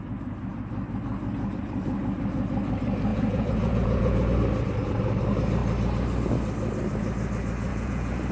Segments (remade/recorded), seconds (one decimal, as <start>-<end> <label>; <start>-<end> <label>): 0.0-3.1 recorded; 3.1-4.3 remade; 4.3-7.7 recorded; 7.7-8.3 remade